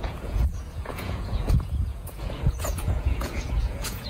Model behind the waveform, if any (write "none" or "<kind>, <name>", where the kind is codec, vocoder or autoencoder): vocoder, Vocos